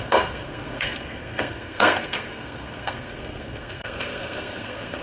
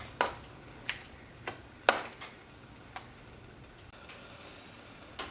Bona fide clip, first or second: second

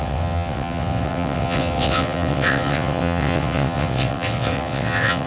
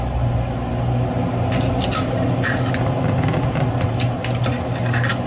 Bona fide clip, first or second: second